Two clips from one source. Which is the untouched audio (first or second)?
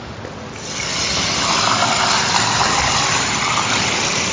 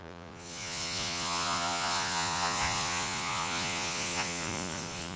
first